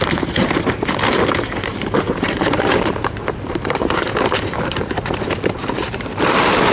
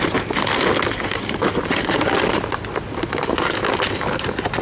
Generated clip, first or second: first